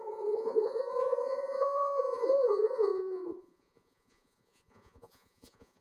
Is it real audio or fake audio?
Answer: fake